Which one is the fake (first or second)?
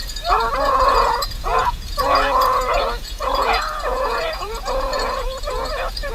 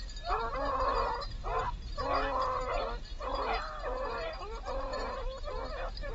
first